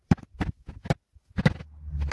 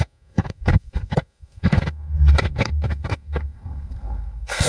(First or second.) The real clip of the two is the first